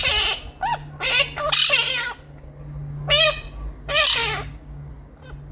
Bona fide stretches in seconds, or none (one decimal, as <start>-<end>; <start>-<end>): 0.0-4.2; 4.9-5.5